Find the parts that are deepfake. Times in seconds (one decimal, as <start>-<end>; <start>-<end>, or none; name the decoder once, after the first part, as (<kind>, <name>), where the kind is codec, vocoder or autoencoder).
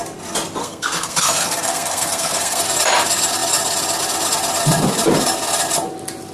0.6-2.6 (codec, SNAC)